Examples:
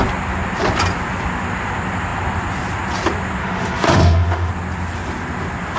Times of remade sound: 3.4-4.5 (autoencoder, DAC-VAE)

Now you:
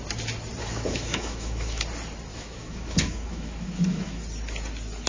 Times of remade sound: 0.6-1.8 (autoencoder, DAC-VAE); 2.3-4.2

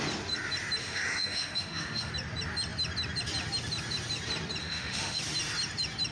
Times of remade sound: 0.8-2.1 (autoencoder, DAC-VAE); 4.6-5.2

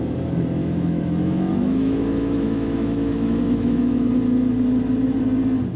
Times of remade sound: 0.6-4.1 (autoencoder, DAC-VAE)

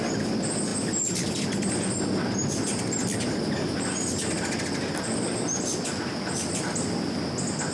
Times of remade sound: none

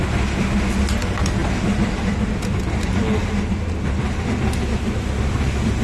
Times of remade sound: none

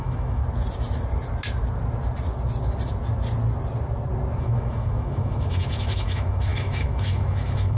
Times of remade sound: 0.0-0.4 (autoencoder, DAC-VAE); 4.4-7.8

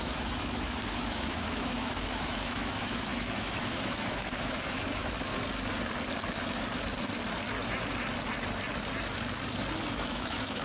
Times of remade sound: 0.0-5.0 (autoencoder, DAC-VAE); 9.8-10.6